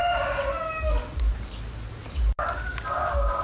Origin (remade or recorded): recorded